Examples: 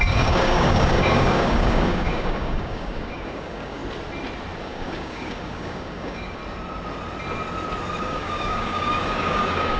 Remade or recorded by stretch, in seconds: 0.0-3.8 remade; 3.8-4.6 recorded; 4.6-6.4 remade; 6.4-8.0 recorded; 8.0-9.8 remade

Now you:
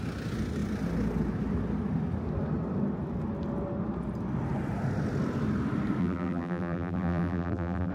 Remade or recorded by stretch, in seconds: 0.0-6.0 recorded; 6.0-7.9 remade

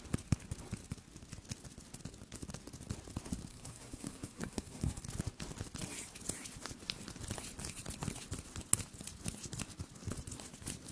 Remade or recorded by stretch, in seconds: 0.0-3.5 recorded; 3.5-5.0 remade; 5.0-10.9 recorded

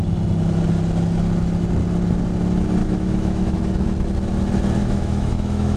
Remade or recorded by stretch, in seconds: 0.0-2.8 recorded; 2.8-3.6 remade; 3.6-4.8 recorded; 4.8-5.8 remade

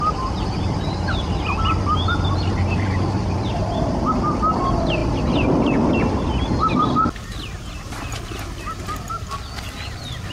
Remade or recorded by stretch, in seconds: 0.0-10.3 recorded